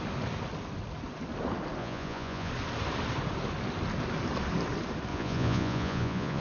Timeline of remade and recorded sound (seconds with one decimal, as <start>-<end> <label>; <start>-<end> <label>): 0.0-1.8 recorded; 1.8-2.5 remade; 2.5-5.1 recorded; 5.1-6.4 remade